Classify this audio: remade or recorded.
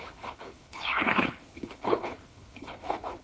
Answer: remade